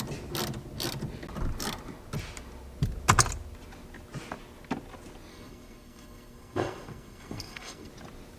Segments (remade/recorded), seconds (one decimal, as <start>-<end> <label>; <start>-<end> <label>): 0.0-5.3 recorded; 5.3-7.9 remade; 7.9-8.4 recorded